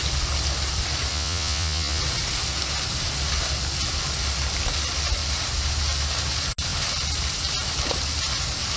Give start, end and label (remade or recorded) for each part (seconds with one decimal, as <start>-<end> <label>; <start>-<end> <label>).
0.0-1.1 recorded; 1.1-2.0 remade; 2.0-8.8 recorded